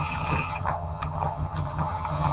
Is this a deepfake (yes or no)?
yes